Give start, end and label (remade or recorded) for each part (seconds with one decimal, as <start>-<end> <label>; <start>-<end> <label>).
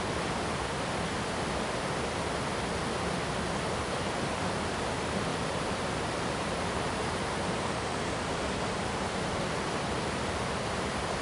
0.0-5.3 recorded; 5.3-8.9 remade; 8.9-11.2 recorded